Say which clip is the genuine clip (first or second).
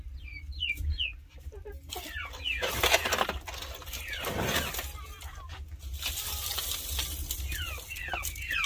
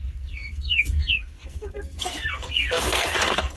first